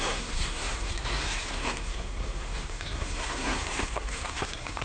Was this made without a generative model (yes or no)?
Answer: no